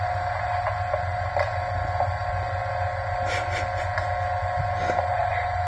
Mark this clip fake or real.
real